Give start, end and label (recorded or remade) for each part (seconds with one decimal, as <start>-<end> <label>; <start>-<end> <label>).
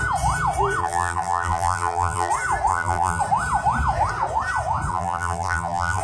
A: 0.0-0.8 recorded; 0.8-2.3 remade; 2.3-2.7 recorded; 2.7-3.2 remade; 3.2-4.9 recorded; 4.9-6.0 remade